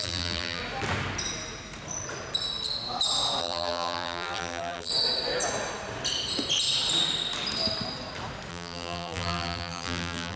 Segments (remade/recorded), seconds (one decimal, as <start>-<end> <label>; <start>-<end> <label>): 0.0-0.6 remade; 0.6-3.4 recorded; 3.4-4.9 remade; 4.9-8.5 recorded; 8.5-10.4 remade